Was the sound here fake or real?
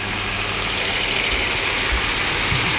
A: real